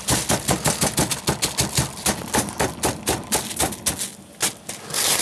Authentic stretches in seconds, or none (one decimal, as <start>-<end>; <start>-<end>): 0.0-5.2